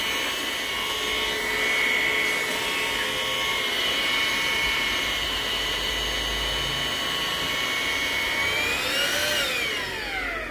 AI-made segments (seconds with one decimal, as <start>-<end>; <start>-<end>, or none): 3.5-5.9